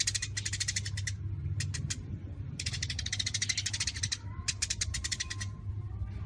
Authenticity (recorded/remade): recorded